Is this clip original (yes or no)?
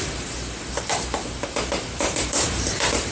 no